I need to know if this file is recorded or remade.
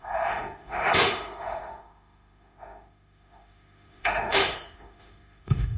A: remade